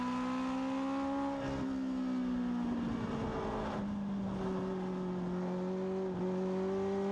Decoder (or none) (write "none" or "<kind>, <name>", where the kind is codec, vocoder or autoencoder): none